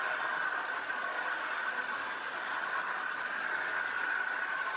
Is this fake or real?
real